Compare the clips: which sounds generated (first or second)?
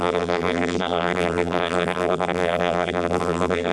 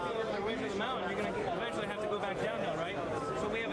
first